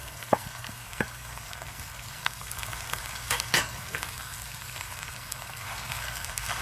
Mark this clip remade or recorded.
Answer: remade